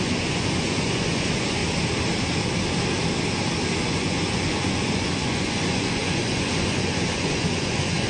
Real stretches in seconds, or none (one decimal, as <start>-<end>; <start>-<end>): 1.6-3.8